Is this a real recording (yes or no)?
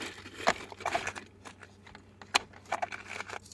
yes